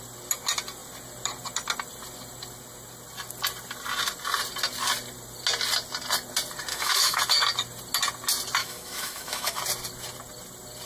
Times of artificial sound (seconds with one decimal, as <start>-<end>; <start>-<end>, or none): 6.7-7.2; 8.6-9.6